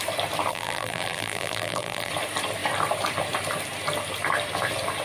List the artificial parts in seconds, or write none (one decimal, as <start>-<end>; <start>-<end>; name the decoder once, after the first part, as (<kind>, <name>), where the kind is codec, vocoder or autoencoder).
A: 0.5-2.1 (vocoder, BigVGAN v2)